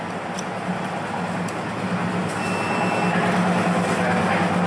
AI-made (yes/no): no